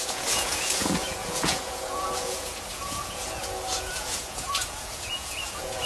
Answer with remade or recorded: remade